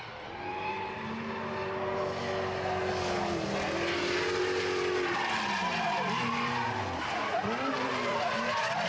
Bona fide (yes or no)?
yes